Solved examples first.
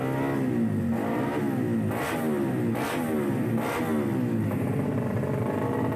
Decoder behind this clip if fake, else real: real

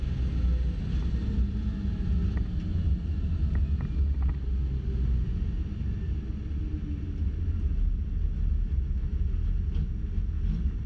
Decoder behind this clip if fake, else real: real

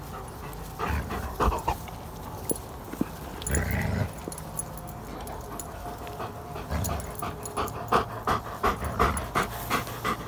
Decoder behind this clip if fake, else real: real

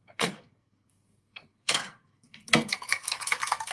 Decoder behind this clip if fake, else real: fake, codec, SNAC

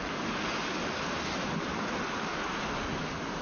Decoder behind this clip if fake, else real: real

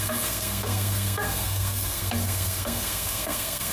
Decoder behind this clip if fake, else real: fake, codec, SNAC